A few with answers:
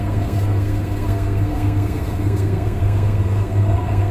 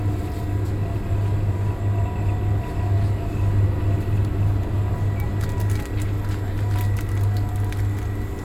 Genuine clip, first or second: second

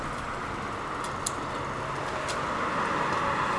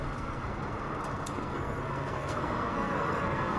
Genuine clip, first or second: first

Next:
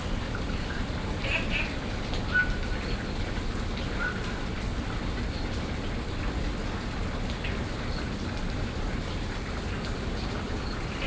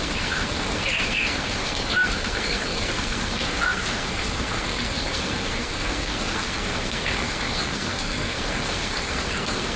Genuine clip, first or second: first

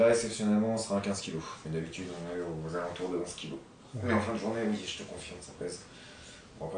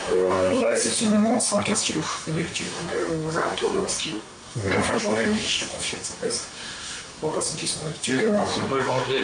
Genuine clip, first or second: first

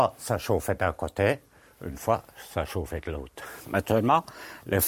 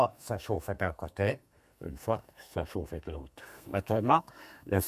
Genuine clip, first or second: first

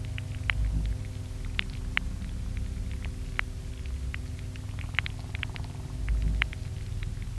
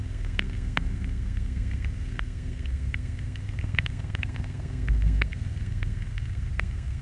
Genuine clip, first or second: first